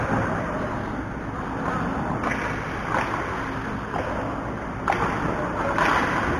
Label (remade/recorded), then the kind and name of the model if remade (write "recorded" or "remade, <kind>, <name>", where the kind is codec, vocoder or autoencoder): recorded